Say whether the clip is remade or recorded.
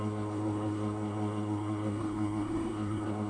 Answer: remade